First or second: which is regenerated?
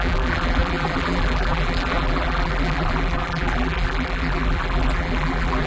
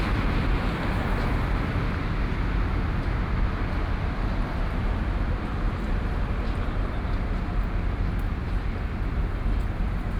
first